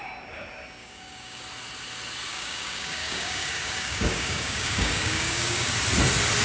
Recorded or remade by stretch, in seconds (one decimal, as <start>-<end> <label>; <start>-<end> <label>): 0.0-0.8 recorded; 0.8-1.4 remade; 1.4-2.3 recorded; 2.3-5.7 remade; 5.7-6.4 recorded